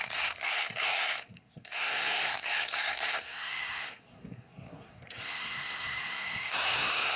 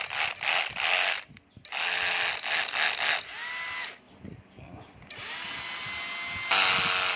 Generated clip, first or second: first